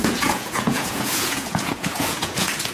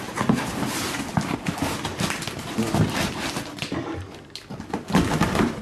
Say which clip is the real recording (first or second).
second